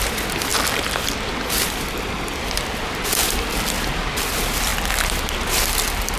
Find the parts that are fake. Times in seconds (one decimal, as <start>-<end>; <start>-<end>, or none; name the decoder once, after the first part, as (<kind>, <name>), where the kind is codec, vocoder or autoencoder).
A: none

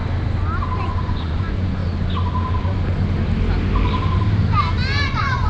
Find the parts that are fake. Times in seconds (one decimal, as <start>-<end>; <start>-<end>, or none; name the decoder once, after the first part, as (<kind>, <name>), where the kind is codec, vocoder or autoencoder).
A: 0.8-1.8 (vocoder, Vocos); 5.1-5.5

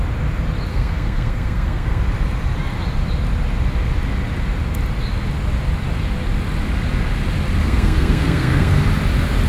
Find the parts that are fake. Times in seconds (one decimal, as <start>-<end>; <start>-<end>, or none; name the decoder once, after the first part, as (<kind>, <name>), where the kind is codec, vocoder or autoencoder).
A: 0.7-2.0 (codec, SNAC); 7.6-8.8

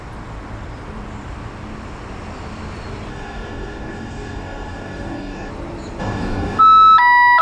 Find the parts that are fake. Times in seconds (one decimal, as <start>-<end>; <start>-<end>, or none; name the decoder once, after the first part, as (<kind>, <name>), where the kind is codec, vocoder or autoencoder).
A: 3.1-5.5 (codec, DAC); 6.0-6.6